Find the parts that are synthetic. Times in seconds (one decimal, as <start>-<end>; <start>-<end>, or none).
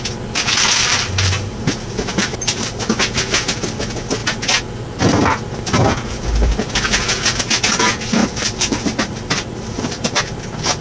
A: 0.8-1.6; 2.2-2.8; 8.2-10.2